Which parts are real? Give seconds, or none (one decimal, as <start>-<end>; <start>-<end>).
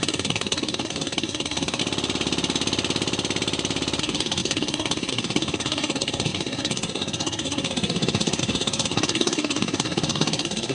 1.8-4.0